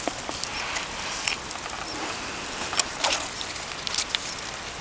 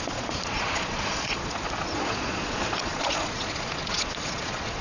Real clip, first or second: first